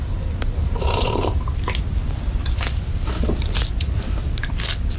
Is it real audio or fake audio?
real